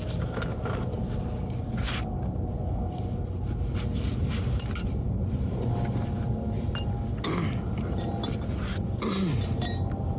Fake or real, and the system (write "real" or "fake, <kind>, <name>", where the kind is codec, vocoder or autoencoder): real